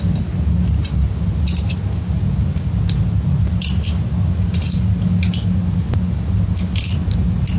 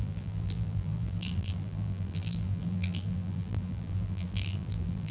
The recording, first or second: first